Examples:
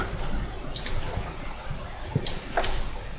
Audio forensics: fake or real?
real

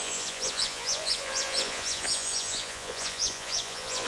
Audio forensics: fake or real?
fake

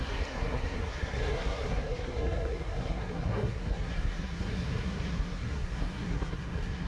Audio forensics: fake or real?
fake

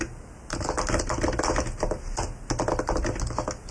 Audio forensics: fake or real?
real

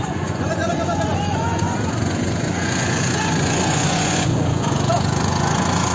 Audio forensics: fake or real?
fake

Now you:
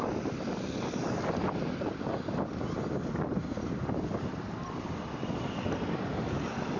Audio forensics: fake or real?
real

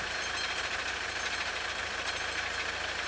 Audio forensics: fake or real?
real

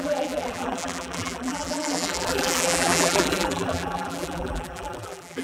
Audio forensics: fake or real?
fake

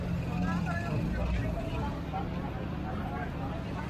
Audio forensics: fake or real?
real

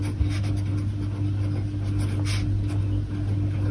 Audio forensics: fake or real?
real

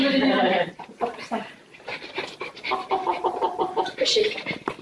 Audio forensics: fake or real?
real